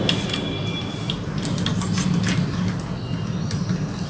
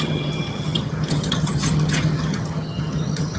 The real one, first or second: first